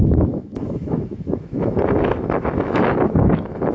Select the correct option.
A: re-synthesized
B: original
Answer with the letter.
A